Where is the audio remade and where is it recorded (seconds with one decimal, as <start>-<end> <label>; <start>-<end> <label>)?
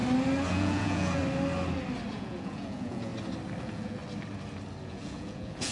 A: 0.0-0.5 recorded; 0.5-1.2 remade; 1.2-2.1 recorded; 2.1-3.1 remade; 3.1-3.6 recorded; 3.6-4.0 remade; 4.0-4.8 recorded; 4.8-5.7 remade